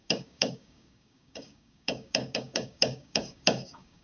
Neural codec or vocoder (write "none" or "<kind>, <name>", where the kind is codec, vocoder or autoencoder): codec, DAC